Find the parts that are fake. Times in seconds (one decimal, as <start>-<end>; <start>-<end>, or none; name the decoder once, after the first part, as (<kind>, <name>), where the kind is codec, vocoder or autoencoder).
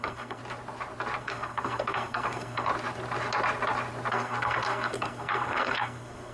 0.0-0.4 (codec, SNAC); 1.2-2.7; 4.1-6.3